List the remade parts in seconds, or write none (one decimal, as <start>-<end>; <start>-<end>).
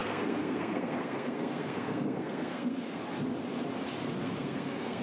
0.0-3.0; 4.2-5.0